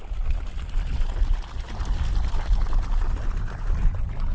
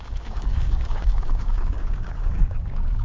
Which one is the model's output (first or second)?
second